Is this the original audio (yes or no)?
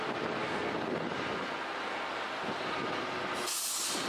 yes